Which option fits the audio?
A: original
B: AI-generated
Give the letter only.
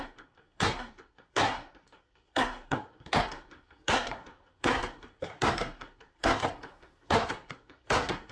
B